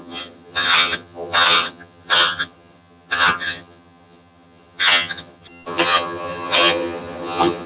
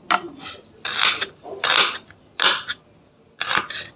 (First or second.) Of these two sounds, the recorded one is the second